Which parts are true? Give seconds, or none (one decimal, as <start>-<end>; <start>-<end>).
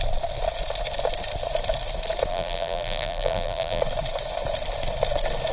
0.0-2.3; 3.8-5.5